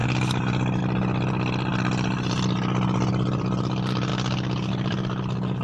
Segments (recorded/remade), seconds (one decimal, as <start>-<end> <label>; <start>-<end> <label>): 0.0-0.8 recorded; 0.8-4.1 remade; 4.1-4.7 recorded; 4.7-5.6 remade